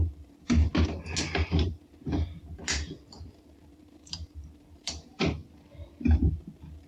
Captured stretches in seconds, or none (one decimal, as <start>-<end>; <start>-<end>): 0.7-1.5; 2.6-3.3; 5.4-6.2